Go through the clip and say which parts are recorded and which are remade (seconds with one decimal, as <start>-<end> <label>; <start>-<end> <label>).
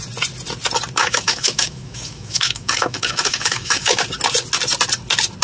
0.0-1.0 recorded; 1.0-4.0 remade; 4.0-5.4 recorded